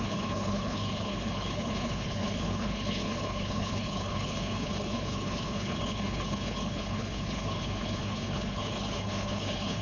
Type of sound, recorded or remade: remade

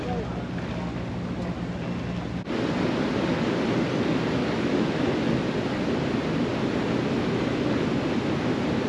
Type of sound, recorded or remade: recorded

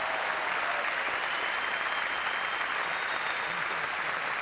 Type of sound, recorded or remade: recorded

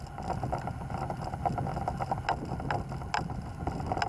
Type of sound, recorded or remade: recorded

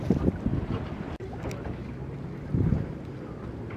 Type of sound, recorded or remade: recorded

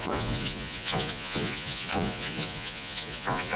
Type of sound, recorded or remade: remade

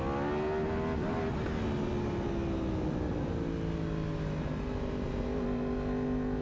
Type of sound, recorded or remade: recorded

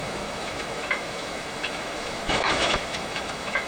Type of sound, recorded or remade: remade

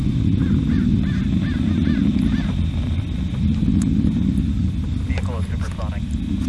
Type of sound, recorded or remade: recorded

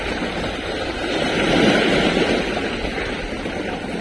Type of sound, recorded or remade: recorded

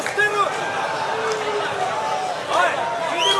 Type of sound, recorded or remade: recorded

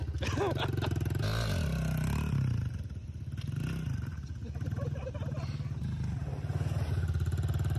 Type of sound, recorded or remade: recorded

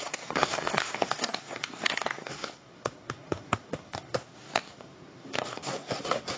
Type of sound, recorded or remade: remade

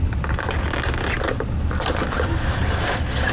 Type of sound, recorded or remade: recorded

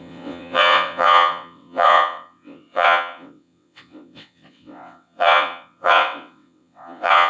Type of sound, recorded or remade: remade